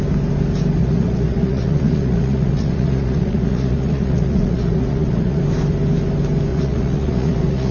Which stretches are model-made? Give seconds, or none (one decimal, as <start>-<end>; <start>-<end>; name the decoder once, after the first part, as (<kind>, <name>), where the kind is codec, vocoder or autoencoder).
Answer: 0.8-5.4 (vocoder, Vocos); 6.5-7.7